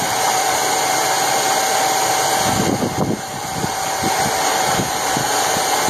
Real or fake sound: real